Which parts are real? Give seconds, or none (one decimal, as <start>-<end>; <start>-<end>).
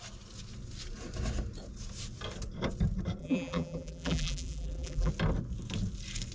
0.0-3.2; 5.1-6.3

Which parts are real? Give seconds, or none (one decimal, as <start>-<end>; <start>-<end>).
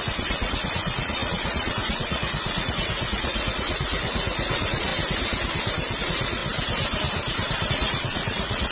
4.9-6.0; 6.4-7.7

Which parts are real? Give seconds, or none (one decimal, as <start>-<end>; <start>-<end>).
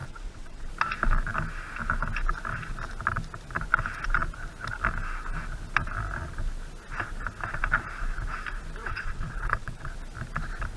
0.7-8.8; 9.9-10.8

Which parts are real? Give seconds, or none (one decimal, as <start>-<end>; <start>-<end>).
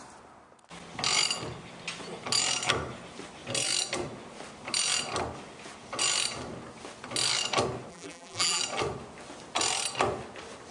0.0-7.9; 8.6-10.7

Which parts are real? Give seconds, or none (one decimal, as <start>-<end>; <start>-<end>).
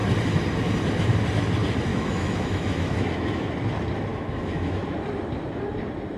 0.0-1.9; 3.5-4.1; 4.8-6.2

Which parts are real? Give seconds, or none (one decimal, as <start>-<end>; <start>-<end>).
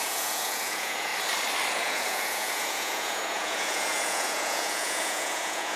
1.1-1.7